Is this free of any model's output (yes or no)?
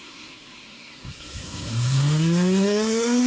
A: no